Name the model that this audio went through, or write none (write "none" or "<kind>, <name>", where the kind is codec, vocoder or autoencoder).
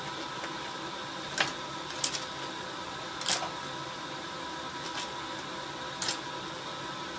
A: none